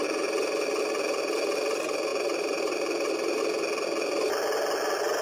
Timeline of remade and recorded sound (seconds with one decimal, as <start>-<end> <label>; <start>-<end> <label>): 0.0-2.1 recorded; 2.1-3.4 remade; 3.4-5.2 recorded